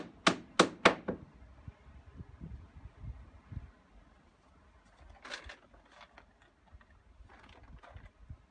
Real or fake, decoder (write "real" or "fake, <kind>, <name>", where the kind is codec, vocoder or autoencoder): real